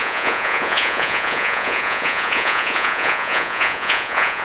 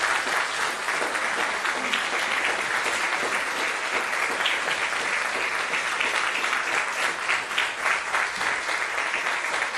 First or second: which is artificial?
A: first